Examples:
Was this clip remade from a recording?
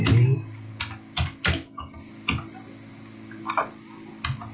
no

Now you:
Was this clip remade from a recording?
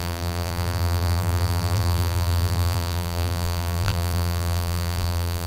yes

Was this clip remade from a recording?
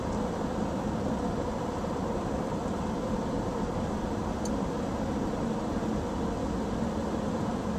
no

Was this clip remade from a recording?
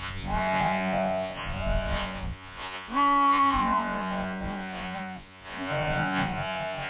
yes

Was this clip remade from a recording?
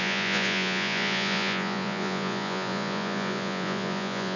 yes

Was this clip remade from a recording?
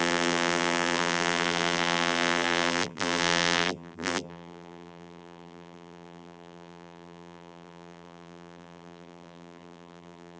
yes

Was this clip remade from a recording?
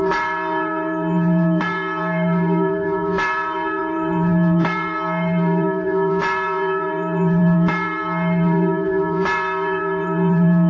yes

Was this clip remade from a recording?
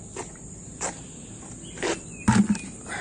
no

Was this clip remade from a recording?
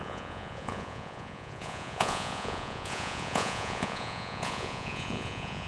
yes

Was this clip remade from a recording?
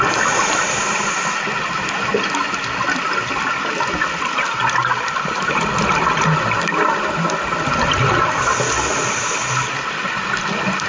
no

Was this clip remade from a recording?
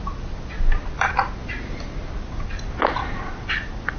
no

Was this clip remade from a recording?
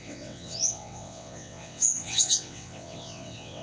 yes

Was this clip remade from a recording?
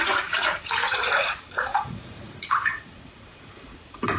yes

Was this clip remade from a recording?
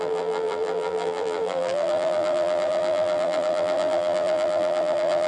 yes